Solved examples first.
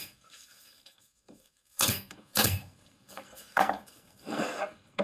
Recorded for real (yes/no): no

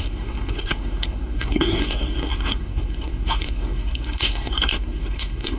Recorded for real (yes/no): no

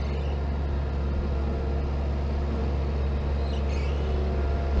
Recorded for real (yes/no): yes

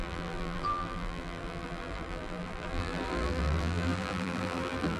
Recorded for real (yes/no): no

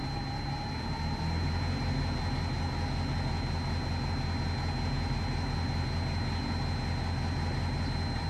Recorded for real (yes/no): yes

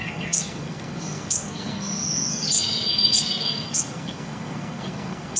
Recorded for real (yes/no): no